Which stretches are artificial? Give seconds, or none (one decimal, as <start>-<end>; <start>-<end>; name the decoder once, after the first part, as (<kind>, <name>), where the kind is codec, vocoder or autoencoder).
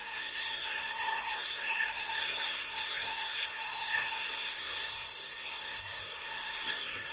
0.0-7.1 (codec, SNAC)